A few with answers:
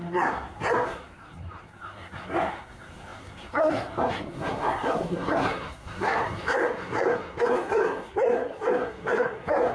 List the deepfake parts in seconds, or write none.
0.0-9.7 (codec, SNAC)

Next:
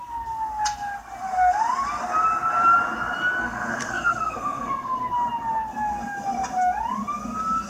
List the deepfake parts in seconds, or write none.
3.4-5.1 (codec, SNAC)

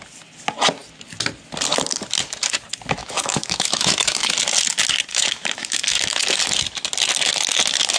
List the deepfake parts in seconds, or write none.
3.0-4.3 (autoencoder, DAC-VAE); 5.1-6.4

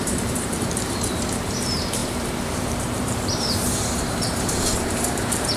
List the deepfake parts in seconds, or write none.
0.0-5.6 (vocoder, BigVGAN v2)